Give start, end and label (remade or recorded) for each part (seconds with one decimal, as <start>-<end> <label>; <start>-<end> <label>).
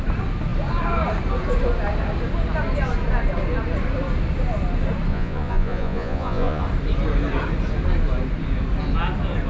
0.0-5.1 recorded; 5.1-6.6 remade; 6.6-9.5 recorded